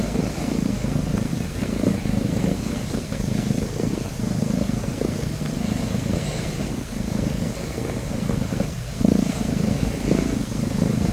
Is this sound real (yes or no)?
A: no